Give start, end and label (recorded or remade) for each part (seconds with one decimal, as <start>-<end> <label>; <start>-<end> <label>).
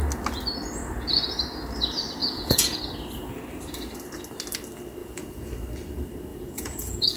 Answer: 0.0-2.2 recorded; 2.2-2.8 remade; 2.8-5.0 recorded; 5.0-5.5 remade; 5.5-6.3 recorded; 6.3-7.2 remade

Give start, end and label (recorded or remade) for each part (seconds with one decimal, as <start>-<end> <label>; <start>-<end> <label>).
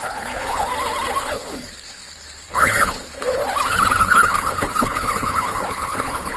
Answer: 0.0-0.7 remade; 0.7-1.2 recorded; 1.2-3.4 remade; 3.4-4.0 recorded; 4.0-6.4 remade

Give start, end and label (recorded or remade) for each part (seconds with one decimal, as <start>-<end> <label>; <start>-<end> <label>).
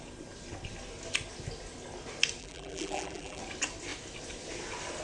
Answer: 0.0-2.4 recorded; 2.4-3.4 remade; 3.4-5.0 recorded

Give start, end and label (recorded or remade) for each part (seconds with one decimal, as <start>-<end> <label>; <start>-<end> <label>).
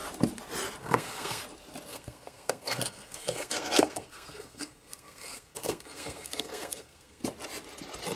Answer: 0.0-0.8 recorded; 0.8-1.4 remade; 1.4-1.9 recorded; 1.9-7.2 remade; 7.2-8.2 recorded